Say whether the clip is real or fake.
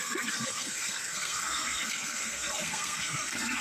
fake